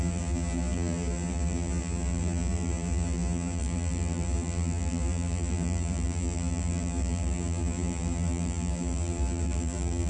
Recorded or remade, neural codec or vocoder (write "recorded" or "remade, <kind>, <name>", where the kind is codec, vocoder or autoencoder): remade, vocoder, BigVGAN v2